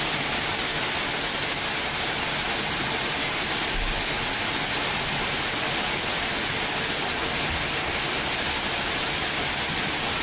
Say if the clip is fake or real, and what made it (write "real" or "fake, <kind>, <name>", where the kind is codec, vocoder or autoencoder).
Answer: real